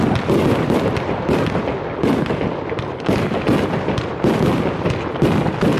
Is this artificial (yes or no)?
no